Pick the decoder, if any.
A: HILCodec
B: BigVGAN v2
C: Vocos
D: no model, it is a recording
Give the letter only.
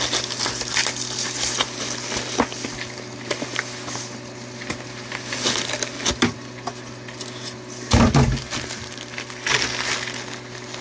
D